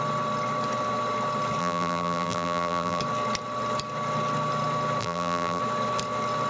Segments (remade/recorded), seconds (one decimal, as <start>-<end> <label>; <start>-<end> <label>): 0.0-1.6 recorded; 1.6-3.0 remade; 3.0-5.0 recorded; 5.0-5.6 remade; 5.6-6.5 recorded